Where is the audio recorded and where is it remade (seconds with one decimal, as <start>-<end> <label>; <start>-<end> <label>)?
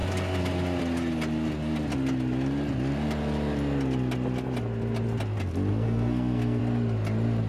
0.0-5.7 recorded; 5.7-6.6 remade; 6.6-7.5 recorded